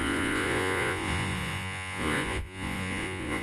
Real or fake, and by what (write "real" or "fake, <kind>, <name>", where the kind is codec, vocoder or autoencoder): fake, vocoder, Vocos